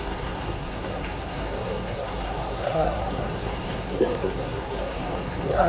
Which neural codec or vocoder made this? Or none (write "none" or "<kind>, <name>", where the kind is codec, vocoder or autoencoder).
codec, SNAC